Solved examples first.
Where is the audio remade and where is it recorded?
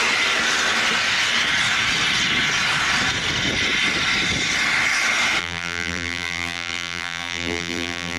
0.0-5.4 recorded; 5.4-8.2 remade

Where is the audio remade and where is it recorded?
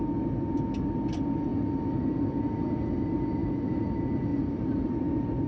0.0-3.4 recorded; 3.4-3.9 remade; 3.9-4.3 recorded; 4.3-4.9 remade; 4.9-5.5 recorded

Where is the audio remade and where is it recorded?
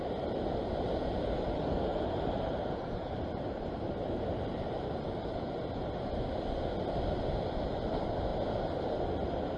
0.0-1.9 recorded; 1.9-6.1 remade; 6.1-9.6 recorded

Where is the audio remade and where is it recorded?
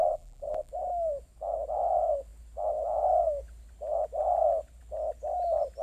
0.0-0.7 remade; 0.7-5.8 recorded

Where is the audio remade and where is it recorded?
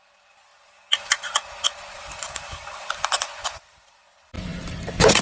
0.0-0.5 remade; 0.5-3.6 recorded; 3.6-5.2 remade